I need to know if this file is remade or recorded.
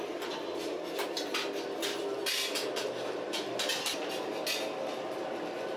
recorded